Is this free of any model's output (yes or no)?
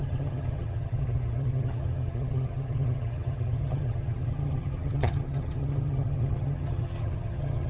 no